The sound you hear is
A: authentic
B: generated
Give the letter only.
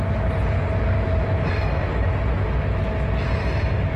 A